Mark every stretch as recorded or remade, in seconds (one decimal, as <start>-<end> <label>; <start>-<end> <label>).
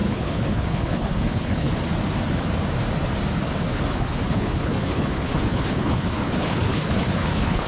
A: 0.0-1.7 remade; 1.7-3.7 recorded; 3.7-7.7 remade